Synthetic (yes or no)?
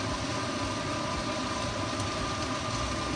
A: no